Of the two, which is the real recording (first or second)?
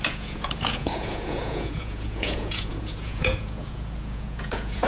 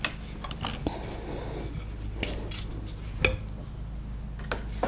second